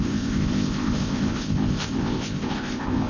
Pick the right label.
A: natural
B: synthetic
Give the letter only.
B